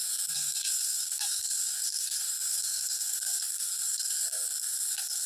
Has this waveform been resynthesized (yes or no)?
yes